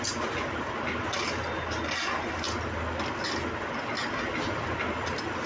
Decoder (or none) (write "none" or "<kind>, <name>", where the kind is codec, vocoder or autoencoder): none